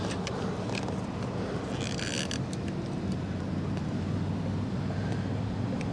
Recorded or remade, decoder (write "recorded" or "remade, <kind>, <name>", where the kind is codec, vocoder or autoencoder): recorded